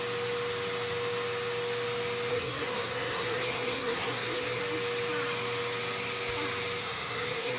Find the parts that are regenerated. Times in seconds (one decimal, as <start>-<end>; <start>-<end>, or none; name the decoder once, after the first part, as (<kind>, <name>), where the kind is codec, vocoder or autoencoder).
2.3-4.6 (codec, SNAC); 6.8-7.6